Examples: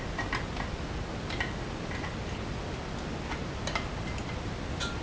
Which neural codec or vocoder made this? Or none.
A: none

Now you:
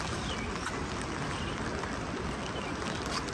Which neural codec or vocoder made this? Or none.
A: none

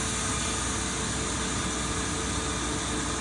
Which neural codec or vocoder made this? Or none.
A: none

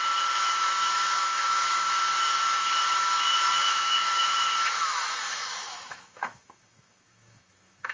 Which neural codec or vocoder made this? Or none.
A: autoencoder, DAC-VAE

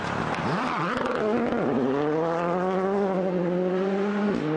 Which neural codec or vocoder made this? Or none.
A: none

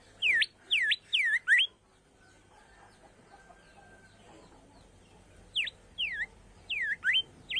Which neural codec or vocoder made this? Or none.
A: none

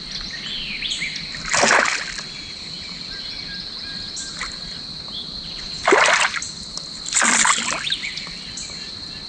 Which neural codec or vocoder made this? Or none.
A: none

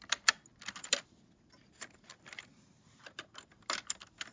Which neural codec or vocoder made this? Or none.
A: none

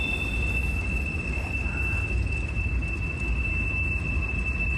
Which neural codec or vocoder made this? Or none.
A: none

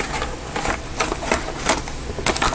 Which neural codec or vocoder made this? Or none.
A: none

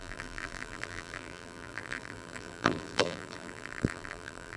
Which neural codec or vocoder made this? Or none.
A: vocoder, BigVGAN v2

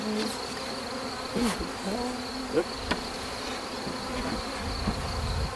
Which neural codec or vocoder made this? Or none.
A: none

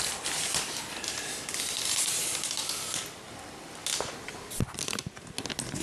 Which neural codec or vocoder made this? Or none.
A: none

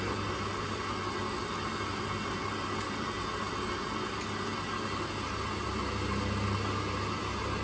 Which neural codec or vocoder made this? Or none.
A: none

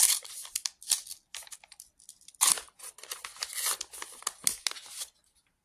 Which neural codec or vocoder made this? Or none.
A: none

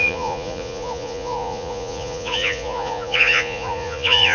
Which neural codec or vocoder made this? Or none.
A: vocoder, Vocos